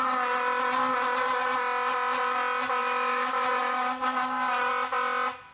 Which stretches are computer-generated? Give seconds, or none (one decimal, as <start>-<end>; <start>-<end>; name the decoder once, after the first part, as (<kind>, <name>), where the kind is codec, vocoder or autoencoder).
2.8-4.7 (autoencoder, DAC-VAE)